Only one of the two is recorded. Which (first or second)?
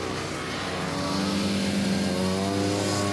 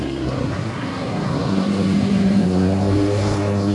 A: first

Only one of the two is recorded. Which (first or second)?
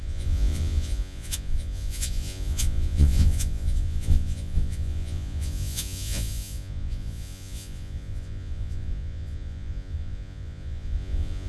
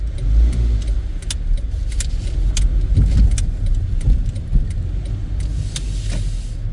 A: second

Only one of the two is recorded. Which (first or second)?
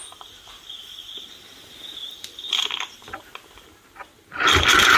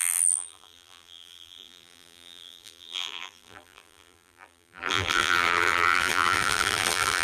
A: first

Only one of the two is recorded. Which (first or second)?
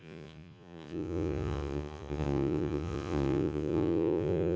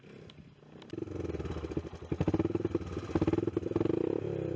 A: second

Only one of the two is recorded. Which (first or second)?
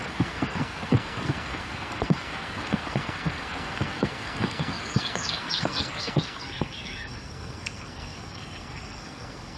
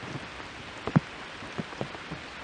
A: second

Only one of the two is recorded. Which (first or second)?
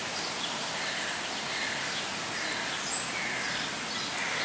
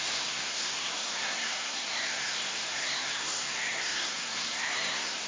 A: first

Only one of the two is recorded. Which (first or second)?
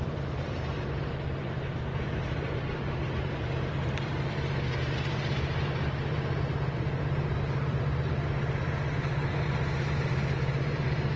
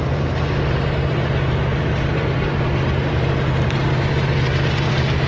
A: second